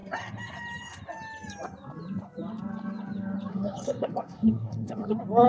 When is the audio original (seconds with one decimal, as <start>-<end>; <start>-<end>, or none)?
0.0-3.5; 5.1-5.5